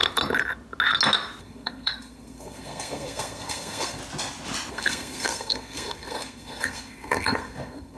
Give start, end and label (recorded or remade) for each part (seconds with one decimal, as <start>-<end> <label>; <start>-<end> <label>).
0.0-1.4 recorded; 1.4-4.0 remade; 4.0-4.7 recorded; 4.7-8.0 remade